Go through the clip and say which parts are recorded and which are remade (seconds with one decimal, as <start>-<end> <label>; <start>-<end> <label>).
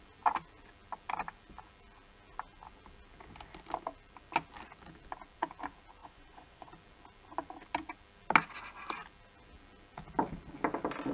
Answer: 0.0-6.0 recorded; 6.0-6.7 remade; 6.7-11.1 recorded